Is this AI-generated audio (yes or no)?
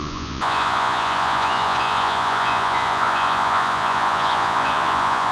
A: yes